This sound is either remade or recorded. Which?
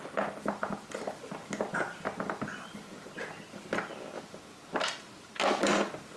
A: recorded